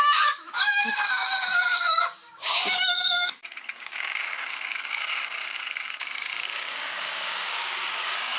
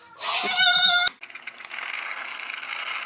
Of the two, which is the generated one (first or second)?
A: first